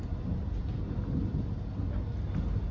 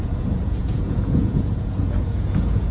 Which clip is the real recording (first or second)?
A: first